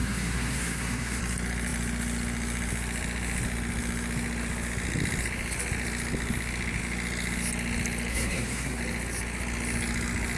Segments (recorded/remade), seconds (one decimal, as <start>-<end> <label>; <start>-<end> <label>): 0.0-1.2 remade; 1.2-8.1 recorded; 8.1-8.8 remade; 8.8-10.4 recorded